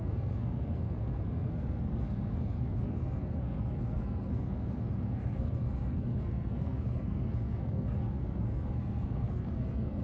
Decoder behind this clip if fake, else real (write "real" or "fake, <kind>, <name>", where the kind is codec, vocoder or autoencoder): fake, codec, SNAC